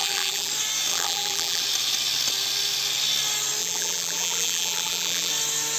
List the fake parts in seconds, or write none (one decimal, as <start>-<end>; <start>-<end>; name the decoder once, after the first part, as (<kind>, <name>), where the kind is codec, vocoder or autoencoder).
0.0-0.5 (vocoder, BigVGAN v2); 0.9-1.6; 3.6-5.3